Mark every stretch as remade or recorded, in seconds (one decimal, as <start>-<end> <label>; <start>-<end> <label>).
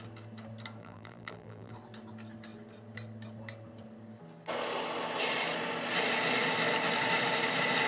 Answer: 0.0-0.8 recorded; 0.8-1.7 remade; 1.7-7.9 recorded